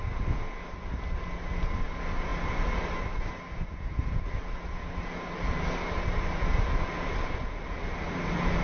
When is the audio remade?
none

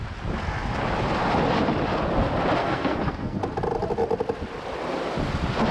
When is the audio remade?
2.6-3.4 (codec, SNAC)

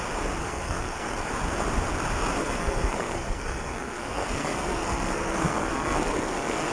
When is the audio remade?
0.4-1.3 (codec, SNAC); 2.4-6.7

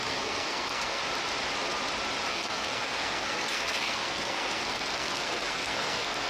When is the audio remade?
0.0-1.0 (codec, SNAC); 2.3-6.3

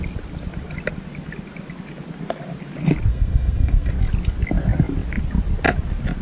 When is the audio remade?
3.1-3.9 (codec, SNAC)

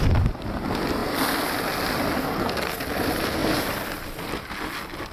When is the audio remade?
2.2-2.8 (codec, SNAC)